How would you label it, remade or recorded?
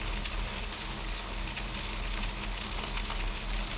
recorded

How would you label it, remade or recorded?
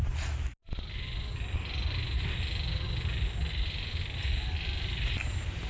recorded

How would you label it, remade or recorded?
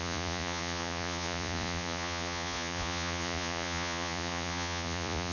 remade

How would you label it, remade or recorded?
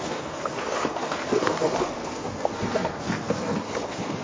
remade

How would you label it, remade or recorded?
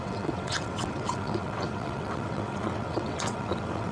remade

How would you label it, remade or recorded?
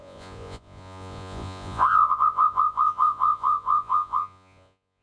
remade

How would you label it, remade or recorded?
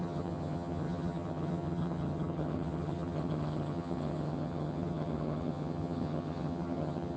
remade